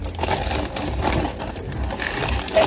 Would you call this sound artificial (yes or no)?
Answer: no